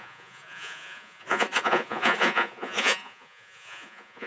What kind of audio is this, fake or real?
fake